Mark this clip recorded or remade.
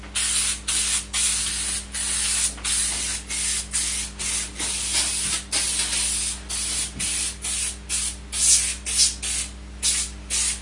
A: recorded